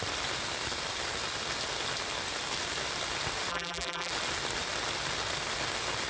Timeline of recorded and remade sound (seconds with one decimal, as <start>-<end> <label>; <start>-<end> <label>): 0.0-3.5 recorded; 3.5-4.1 remade; 4.1-6.1 recorded